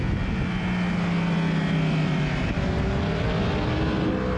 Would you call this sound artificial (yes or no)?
no